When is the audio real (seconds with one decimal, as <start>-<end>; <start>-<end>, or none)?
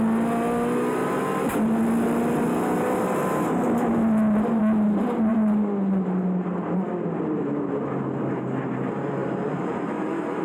0.0-9.2